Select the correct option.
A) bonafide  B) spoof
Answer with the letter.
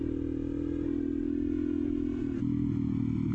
A